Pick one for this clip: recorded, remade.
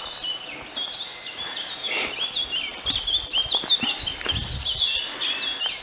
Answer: recorded